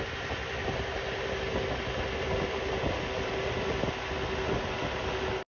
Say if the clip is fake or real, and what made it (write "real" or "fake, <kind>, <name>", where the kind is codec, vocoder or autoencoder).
real